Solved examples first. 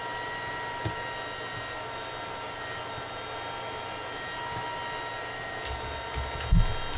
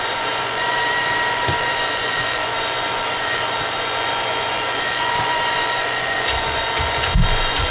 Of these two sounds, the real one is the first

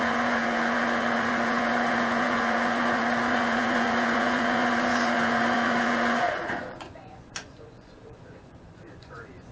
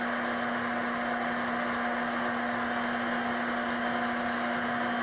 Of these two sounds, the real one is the second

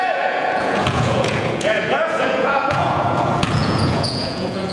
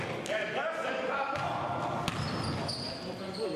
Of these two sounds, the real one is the second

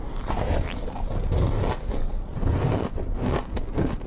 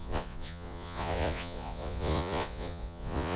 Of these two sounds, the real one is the first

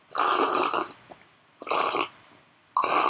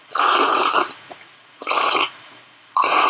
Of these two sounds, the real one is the first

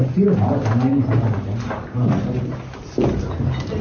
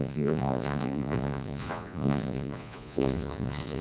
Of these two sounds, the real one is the first